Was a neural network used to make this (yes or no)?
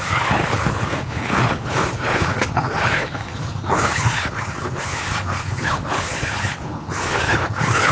yes